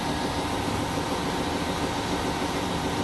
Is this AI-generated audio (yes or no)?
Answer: no